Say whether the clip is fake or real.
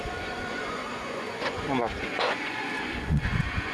fake